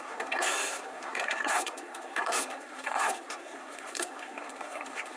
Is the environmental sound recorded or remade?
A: remade